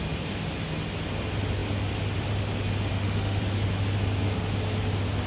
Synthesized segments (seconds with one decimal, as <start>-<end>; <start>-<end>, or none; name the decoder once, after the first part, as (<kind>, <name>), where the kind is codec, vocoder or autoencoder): 2.9-3.4 (autoencoder, DAC-VAE)